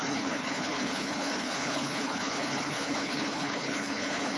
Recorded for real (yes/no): no